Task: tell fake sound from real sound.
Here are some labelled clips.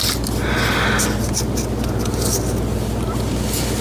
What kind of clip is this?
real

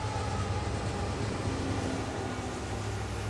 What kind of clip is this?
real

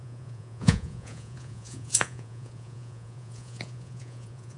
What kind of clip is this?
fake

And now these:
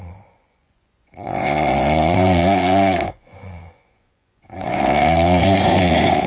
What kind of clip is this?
fake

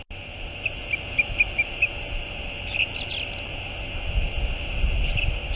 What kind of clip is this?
real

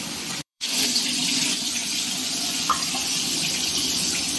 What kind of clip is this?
fake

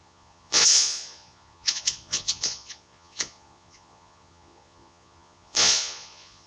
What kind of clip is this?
fake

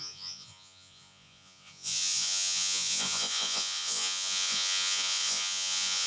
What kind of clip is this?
fake